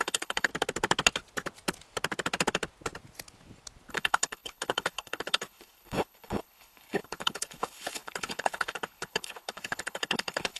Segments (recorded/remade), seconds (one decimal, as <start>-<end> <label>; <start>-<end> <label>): 0.0-0.5 remade; 0.5-3.9 recorded; 3.9-10.6 remade